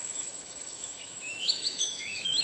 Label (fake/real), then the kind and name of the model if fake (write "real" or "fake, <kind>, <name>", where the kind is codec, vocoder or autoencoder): fake, autoencoder, DAC-VAE